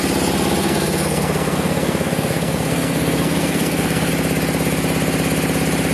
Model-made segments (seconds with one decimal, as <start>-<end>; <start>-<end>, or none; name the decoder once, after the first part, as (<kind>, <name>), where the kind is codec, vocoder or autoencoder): 0.6-4.1 (codec, SNAC)